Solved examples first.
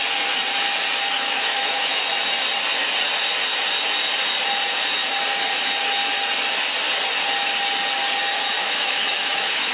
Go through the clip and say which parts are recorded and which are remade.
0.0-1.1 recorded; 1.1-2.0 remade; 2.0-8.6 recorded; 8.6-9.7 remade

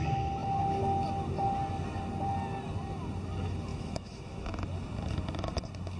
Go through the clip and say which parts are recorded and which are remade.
0.0-3.7 recorded; 3.7-4.5 remade; 4.5-6.0 recorded

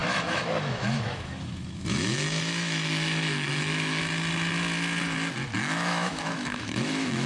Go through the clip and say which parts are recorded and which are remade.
0.0-4.0 remade; 4.0-5.6 recorded; 5.6-7.3 remade

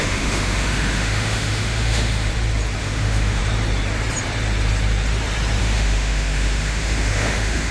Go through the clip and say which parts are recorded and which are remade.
0.0-2.3 remade; 2.3-2.8 recorded; 2.8-3.4 remade; 3.4-5.6 recorded; 5.6-7.7 remade

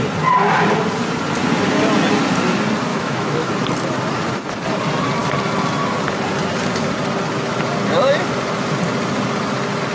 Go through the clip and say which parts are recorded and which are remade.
0.0-2.9 recorded; 2.9-3.5 remade; 3.5-9.9 recorded

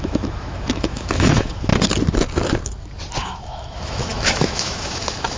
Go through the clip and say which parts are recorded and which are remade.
0.0-1.7 remade; 1.7-3.2 recorded; 3.2-5.4 remade